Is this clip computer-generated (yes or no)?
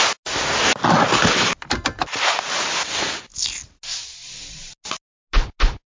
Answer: no